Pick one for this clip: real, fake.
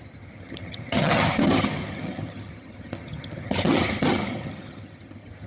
fake